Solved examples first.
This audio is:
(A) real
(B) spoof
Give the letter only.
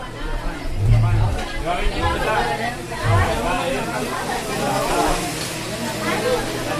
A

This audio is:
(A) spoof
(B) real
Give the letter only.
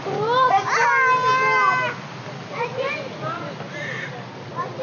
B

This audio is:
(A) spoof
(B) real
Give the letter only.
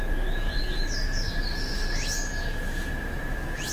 A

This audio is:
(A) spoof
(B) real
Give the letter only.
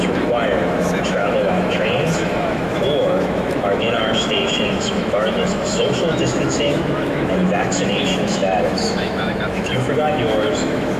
A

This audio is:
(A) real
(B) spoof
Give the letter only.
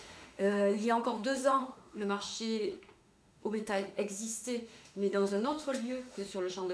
B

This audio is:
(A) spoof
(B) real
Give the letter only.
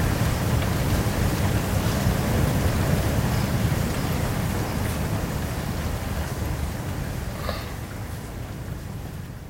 B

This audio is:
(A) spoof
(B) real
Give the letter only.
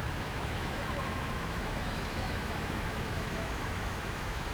A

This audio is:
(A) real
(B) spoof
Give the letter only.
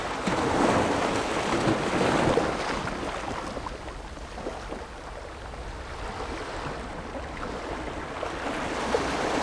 A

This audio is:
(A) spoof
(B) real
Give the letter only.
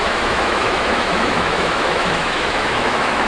A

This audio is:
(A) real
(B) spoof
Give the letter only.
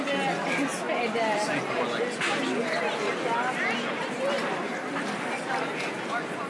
A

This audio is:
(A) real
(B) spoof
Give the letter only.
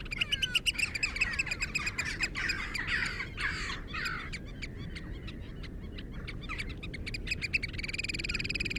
A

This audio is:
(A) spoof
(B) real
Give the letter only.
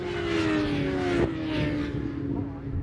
B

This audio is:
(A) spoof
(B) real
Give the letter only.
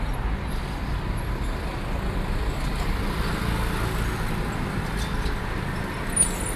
B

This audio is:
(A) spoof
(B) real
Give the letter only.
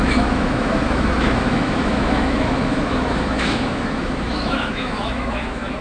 A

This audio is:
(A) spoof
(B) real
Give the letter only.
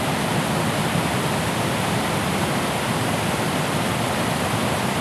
B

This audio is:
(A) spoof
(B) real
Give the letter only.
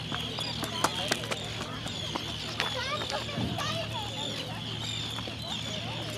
B